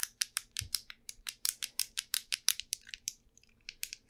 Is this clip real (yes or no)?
no